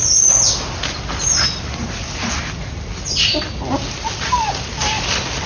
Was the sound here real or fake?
real